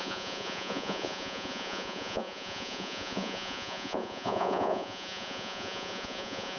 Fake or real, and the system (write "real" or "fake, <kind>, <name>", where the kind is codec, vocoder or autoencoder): fake, vocoder, Vocos